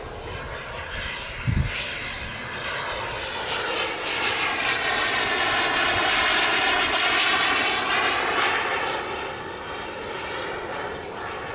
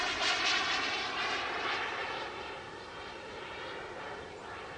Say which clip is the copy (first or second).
second